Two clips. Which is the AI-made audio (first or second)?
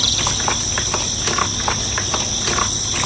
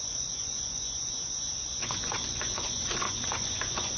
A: second